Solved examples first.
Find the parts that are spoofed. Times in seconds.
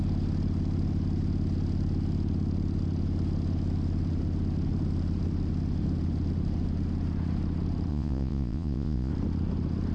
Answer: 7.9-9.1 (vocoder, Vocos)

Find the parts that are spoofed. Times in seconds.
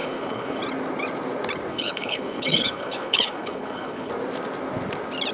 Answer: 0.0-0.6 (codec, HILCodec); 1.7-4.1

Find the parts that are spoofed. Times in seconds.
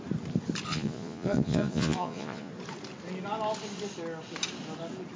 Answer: 0.7-2.5 (vocoder, Vocos)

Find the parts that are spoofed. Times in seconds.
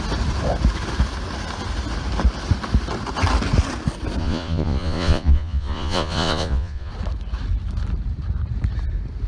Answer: 4.2-6.9 (vocoder, Vocos)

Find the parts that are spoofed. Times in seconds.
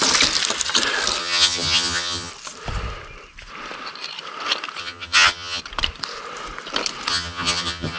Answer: 1.2-2.3 (vocoder, HiFi-GAN); 4.8-5.6; 7.1-8.0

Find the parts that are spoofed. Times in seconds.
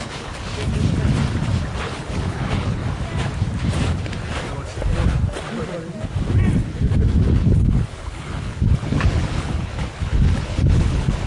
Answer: 0.0-0.5 (codec, HILCodec); 1.8-2.8; 7.2-11.3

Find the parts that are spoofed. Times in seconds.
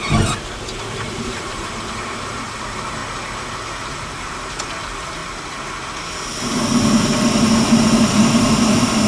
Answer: 0.0-3.0 (vocoder, BigVGAN v2); 3.9-5.2; 8.1-9.1